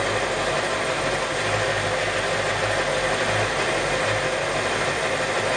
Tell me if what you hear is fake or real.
real